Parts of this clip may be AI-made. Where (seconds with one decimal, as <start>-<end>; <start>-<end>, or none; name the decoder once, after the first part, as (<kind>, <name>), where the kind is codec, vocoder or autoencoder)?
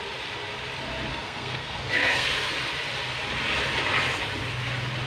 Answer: 1.1-2.5 (codec, SNAC)